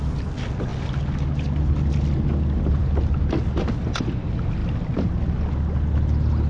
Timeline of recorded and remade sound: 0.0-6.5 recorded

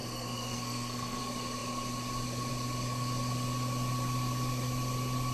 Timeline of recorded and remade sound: 0.0-1.2 remade; 1.2-5.3 recorded

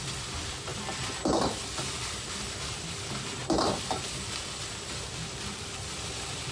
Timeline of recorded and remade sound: 0.0-0.7 remade; 0.7-2.0 recorded; 2.0-3.4 remade; 3.4-4.4 recorded; 4.4-6.5 remade